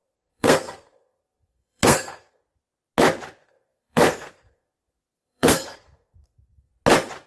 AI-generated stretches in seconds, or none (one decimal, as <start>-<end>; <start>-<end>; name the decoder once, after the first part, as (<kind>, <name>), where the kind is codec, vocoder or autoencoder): 0.0-2.4 (codec, SNAC); 3.4-6.7